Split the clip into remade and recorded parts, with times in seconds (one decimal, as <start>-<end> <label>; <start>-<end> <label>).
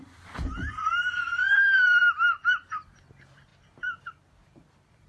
0.0-5.1 remade